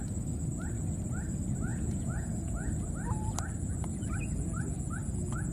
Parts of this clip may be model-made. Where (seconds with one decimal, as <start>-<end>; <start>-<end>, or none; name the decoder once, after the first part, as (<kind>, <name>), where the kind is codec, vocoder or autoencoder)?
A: 1.7-2.7 (vocoder, Vocos)